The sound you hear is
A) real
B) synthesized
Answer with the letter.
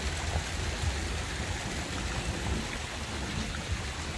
A